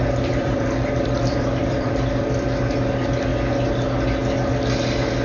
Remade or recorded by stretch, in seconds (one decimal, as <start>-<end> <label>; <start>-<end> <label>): 0.0-2.6 remade; 2.6-5.2 recorded